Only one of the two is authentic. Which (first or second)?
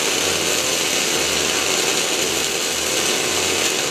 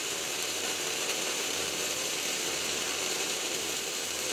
first